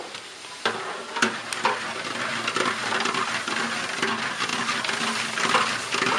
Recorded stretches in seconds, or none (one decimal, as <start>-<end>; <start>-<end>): 0.0-6.2